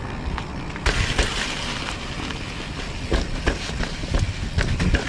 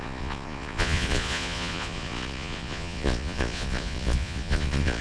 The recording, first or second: first